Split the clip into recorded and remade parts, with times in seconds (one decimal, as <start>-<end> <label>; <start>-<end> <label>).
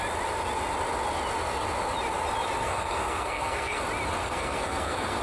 0.0-2.6 recorded; 2.6-3.8 remade; 3.8-4.2 recorded; 4.2-5.2 remade